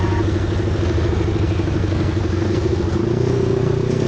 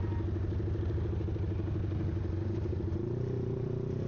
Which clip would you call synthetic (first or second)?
first